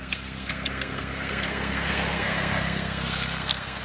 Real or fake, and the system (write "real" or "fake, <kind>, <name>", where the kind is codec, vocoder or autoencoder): fake, codec, SNAC